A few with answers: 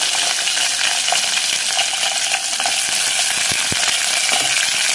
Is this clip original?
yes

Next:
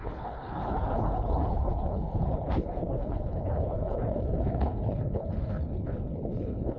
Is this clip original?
no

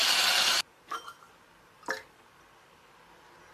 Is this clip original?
yes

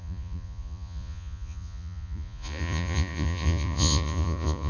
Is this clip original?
no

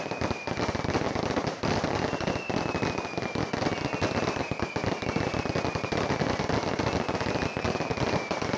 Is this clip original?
yes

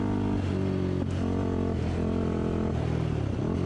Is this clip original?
yes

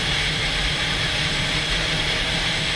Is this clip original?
no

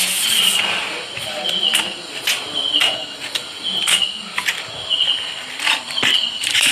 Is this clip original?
yes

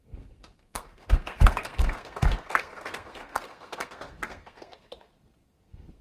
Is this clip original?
no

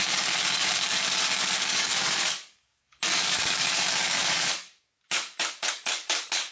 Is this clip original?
no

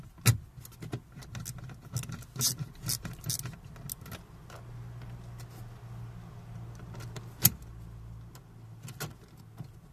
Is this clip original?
yes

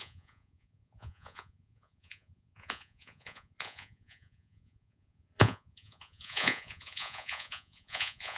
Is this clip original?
no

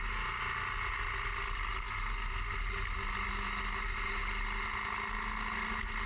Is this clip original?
yes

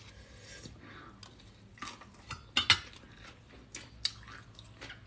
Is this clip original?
yes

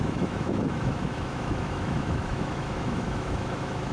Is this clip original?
no